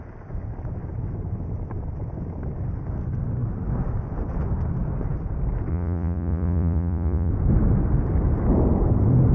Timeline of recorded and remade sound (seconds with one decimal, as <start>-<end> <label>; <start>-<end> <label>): 0.0-5.7 recorded; 5.7-7.3 remade; 7.3-9.3 recorded